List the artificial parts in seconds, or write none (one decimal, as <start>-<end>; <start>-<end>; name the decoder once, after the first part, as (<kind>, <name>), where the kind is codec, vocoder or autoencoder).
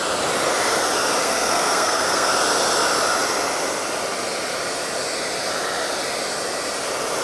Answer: 1.2-2.3 (codec, SNAC)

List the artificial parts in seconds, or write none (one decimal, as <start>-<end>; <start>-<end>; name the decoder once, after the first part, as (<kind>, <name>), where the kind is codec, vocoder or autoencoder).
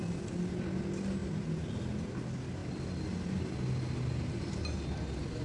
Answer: 2.6-3.4 (vocoder, BigVGAN v2)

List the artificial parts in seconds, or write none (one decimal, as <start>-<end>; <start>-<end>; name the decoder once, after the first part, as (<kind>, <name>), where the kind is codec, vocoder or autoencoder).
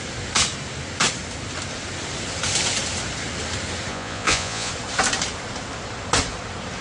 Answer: 3.9-4.7 (vocoder, Vocos)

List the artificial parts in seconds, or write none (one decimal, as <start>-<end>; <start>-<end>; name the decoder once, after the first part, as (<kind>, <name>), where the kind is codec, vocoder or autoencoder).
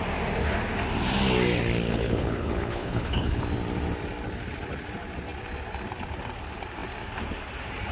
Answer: 1.9-3.4 (codec, HILCodec)